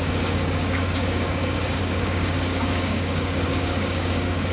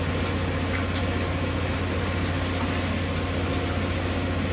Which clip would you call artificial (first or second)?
first